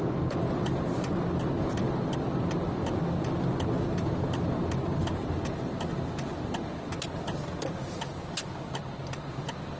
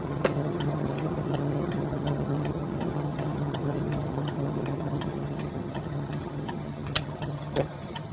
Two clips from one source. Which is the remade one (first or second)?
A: second